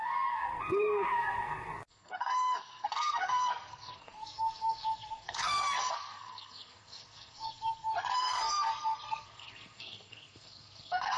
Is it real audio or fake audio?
fake